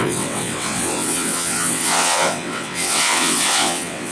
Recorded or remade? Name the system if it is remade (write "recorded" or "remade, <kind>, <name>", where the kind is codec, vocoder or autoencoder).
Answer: remade, vocoder, WaveNeXt